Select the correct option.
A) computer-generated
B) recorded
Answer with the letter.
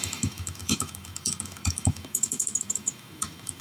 A